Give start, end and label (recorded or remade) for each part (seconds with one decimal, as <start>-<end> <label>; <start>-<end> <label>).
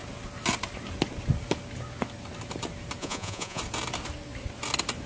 0.0-3.0 recorded; 3.0-3.6 remade; 3.6-5.1 recorded